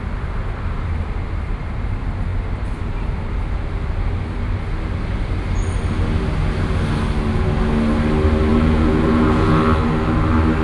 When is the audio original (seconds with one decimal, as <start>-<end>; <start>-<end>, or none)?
0.0-8.5; 9.6-10.6

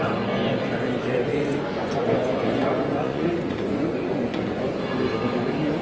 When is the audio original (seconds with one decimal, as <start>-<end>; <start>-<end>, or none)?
0.0-1.3; 4.8-5.8

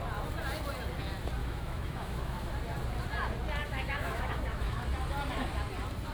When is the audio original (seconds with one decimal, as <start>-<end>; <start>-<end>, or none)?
0.0-1.4; 2.5-3.6; 4.8-6.1

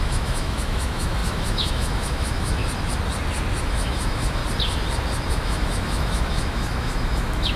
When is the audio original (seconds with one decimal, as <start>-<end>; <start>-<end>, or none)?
2.6-3.6; 4.4-5.3

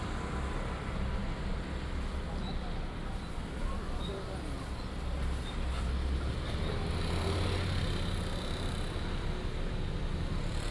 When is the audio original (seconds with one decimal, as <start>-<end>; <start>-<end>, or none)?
0.0-10.7

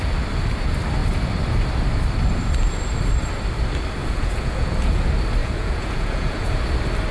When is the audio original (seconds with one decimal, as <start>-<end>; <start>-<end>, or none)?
0.0-4.0; 5.0-5.4; 6.6-7.1

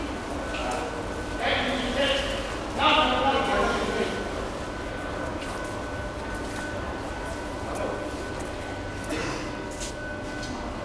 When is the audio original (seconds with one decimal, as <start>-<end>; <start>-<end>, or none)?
0.0-10.8

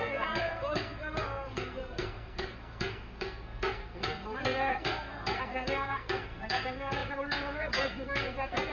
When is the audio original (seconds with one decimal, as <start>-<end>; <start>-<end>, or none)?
none